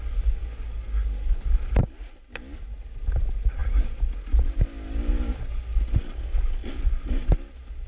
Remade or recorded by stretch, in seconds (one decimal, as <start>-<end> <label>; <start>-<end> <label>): 0.0-7.9 recorded